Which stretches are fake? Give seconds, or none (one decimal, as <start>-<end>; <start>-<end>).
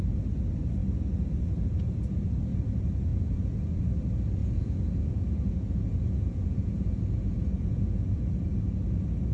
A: 3.1-3.9; 4.4-8.2